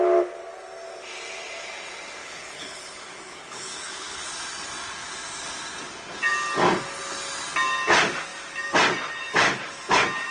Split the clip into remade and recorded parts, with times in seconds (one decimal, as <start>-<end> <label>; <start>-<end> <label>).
0.0-2.2 recorded; 2.2-4.3 remade; 4.3-10.3 recorded